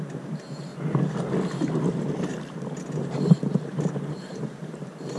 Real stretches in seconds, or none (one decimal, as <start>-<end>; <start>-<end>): 0.7-1.8; 2.3-2.9